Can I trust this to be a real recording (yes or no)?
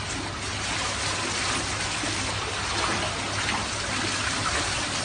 yes